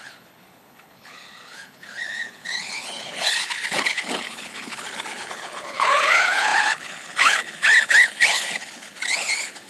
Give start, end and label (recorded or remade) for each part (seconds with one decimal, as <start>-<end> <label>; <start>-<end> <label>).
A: 0.0-9.7 remade